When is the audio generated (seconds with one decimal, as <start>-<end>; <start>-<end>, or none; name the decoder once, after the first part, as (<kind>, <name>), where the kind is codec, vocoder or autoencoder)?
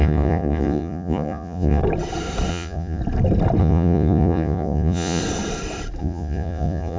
0.0-1.8 (vocoder, Vocos); 2.5-3.0; 3.6-5.2; 6.0-7.0